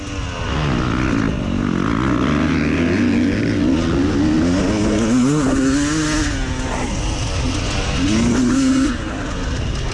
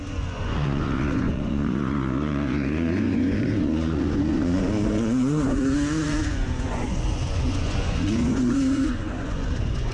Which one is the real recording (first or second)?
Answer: first